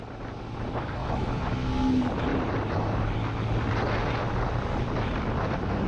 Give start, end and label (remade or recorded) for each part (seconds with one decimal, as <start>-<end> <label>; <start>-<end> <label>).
0.0-1.0 recorded; 1.0-1.7 remade; 1.7-5.9 recorded